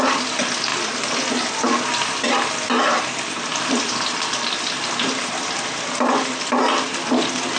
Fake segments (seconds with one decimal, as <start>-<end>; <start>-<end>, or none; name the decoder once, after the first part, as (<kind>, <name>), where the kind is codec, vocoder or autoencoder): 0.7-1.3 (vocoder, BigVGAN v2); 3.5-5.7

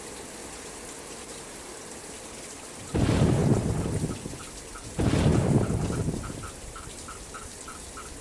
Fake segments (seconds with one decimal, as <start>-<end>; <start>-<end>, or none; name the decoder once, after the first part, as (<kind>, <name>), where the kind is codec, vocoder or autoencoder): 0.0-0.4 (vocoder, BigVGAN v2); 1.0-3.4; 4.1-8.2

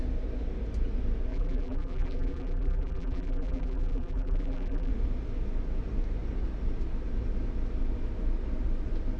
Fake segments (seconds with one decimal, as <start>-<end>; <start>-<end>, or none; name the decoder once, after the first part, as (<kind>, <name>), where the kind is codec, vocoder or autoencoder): 1.3-4.9 (vocoder, BigVGAN v2)

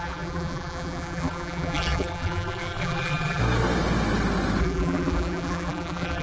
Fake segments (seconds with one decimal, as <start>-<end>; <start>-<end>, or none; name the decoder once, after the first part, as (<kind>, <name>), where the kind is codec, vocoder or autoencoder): 0.0-3.4 (vocoder, BigVGAN v2); 4.6-6.2

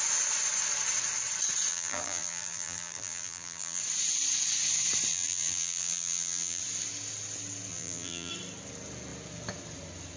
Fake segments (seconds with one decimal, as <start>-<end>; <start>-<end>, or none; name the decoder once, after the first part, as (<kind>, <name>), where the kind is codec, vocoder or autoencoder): 1.7-3.8 (vocoder, BigVGAN v2); 5.1-6.6; 7.7-8.3

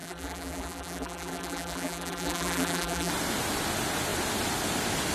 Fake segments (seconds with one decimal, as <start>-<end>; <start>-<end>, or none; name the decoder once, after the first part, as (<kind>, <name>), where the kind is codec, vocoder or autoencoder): 0.0-3.1 (vocoder, BigVGAN v2)

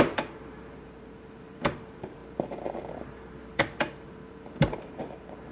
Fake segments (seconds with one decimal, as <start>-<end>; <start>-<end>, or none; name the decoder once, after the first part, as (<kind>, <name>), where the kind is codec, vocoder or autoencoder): 0.0-5.5 (vocoder, BigVGAN v2)